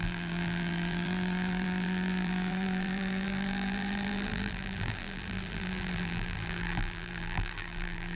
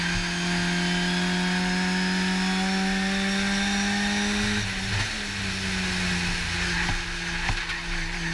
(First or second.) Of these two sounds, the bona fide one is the second